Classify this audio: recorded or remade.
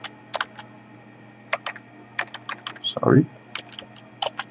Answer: recorded